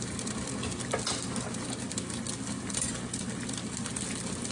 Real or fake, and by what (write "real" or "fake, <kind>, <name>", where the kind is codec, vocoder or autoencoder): real